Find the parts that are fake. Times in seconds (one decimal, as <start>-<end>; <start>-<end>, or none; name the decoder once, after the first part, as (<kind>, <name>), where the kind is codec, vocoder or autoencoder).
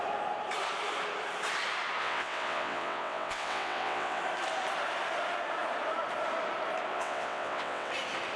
2.0-4.2 (vocoder, WaveNeXt); 6.9-7.9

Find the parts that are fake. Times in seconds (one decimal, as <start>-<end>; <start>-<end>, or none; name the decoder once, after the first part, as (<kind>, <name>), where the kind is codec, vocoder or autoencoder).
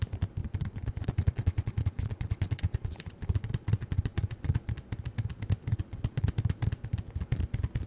0.4-4.7 (vocoder, Vocos); 5.7-6.3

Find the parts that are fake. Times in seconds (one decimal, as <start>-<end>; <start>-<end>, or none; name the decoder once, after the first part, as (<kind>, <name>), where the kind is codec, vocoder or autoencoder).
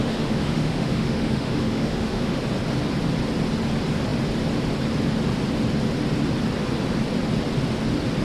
0.0-2.4 (autoencoder, DAC-VAE)